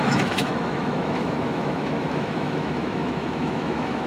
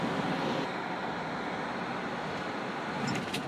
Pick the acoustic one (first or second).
second